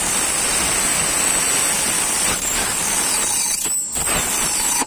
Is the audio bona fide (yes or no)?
yes